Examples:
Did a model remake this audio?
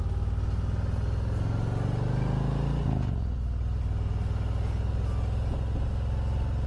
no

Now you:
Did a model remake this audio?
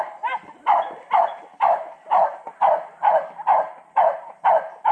yes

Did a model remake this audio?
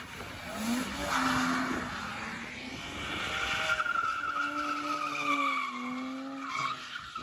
no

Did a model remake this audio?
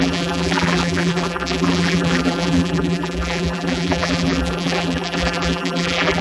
yes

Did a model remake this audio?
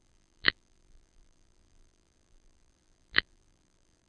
yes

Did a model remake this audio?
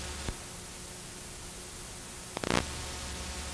no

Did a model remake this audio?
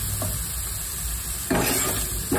no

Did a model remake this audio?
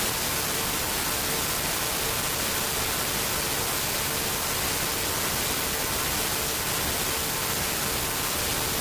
no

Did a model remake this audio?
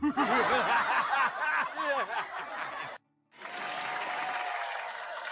no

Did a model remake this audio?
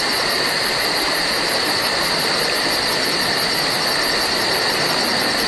yes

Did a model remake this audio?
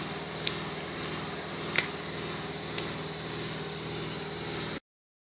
no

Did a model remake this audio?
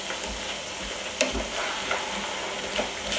no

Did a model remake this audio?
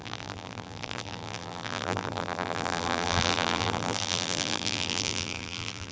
yes